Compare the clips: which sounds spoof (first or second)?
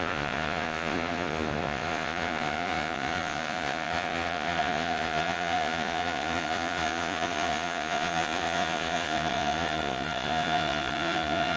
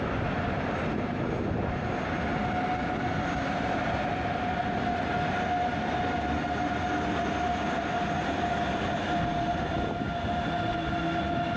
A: first